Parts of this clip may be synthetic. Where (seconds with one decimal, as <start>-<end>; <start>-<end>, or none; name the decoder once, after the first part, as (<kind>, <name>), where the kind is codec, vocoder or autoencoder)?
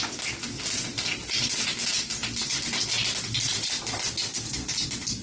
none